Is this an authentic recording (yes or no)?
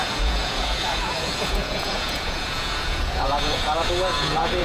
no